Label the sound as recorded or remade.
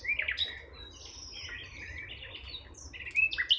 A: recorded